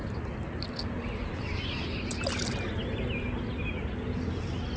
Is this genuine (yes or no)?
yes